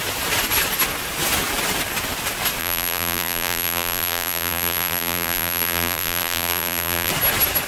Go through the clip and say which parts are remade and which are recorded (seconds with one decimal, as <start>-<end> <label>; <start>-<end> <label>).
0.0-2.6 recorded; 2.6-7.1 remade; 7.1-7.7 recorded